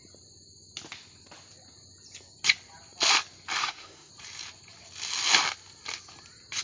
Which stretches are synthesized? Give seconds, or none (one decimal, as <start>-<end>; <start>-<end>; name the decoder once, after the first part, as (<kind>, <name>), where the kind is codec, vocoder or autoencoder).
3.6-4.1 (autoencoder, DAC-VAE)